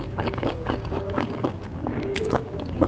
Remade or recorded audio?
remade